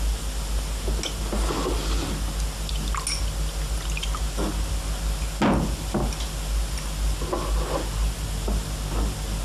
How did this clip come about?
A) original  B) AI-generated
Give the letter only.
A